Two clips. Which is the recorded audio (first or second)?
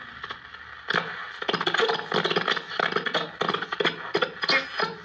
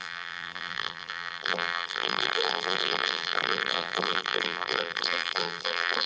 first